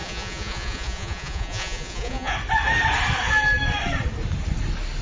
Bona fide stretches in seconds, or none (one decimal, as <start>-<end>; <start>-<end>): 2.3-5.0